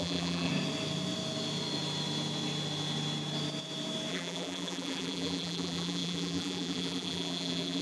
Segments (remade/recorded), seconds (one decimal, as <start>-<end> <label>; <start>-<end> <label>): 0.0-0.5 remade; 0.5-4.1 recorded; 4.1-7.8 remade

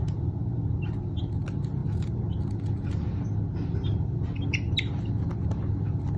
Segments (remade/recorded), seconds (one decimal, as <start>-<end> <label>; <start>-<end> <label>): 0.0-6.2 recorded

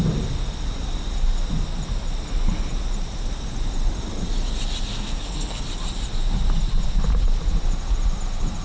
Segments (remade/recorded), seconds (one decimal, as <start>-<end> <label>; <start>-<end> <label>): 0.0-4.9 recorded; 4.9-5.6 remade; 5.6-8.6 recorded

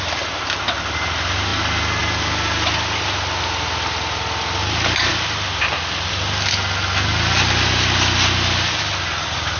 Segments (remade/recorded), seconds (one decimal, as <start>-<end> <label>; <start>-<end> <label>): 0.0-9.6 recorded